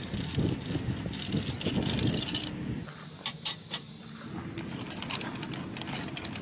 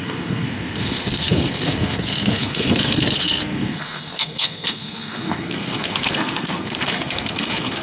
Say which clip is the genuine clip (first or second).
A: first